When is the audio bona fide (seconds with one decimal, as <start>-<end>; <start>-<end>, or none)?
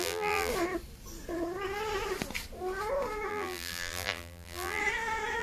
0.5-3.3; 4.8-5.4